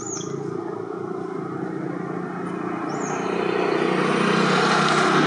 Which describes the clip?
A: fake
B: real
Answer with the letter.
B